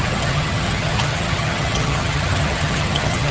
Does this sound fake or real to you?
fake